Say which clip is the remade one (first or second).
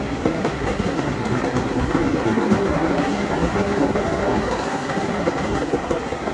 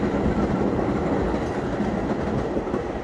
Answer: first